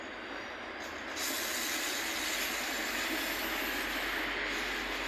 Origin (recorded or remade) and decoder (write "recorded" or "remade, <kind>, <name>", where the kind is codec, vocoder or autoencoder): recorded